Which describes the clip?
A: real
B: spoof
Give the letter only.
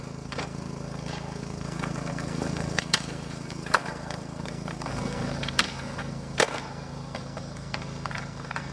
B